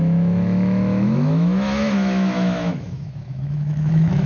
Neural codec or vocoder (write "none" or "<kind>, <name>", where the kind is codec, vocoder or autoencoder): autoencoder, DAC-VAE